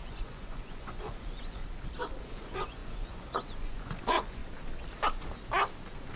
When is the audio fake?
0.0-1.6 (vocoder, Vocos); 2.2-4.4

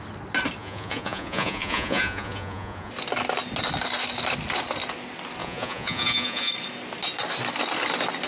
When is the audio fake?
0.6-2.9 (vocoder, Vocos); 5.4-6.5

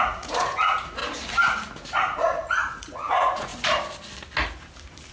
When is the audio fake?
0.0-1.0 (vocoder, Vocos); 2.0-3.5

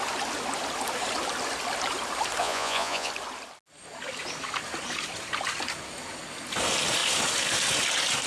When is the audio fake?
2.4-3.1 (vocoder, Vocos)

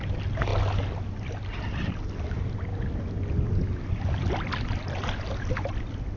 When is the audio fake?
none

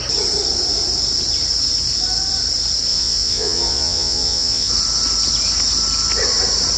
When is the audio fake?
2.9-4.7 (vocoder, Vocos)